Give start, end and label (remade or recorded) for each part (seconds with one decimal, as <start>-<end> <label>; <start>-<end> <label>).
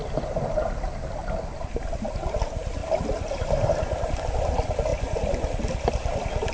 0.0-2.8 recorded; 2.8-4.2 remade; 4.2-6.5 recorded